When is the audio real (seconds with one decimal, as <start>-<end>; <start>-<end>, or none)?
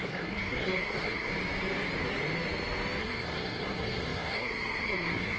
1.3-3.0